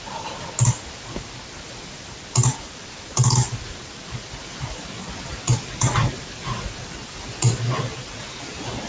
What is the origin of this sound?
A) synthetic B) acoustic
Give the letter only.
B